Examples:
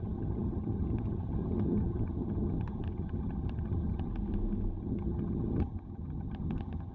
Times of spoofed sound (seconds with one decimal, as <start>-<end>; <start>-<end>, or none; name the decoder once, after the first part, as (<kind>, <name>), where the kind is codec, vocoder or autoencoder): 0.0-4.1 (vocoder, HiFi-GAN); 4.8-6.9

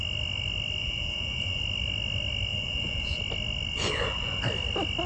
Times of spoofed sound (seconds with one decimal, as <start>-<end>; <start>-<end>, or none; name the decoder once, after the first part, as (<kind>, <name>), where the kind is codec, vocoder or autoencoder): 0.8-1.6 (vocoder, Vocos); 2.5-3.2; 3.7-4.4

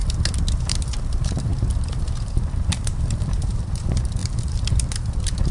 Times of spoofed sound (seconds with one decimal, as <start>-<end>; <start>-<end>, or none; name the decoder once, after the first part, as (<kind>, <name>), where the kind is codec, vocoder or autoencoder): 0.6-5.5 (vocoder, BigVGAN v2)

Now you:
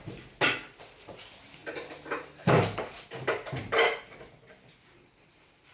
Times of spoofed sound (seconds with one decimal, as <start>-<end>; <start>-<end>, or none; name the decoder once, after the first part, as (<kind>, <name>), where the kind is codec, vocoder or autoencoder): none